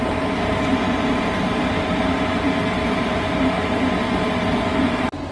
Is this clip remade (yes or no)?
yes